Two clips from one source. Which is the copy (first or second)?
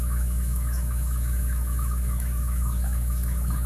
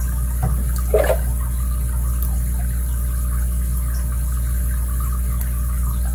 first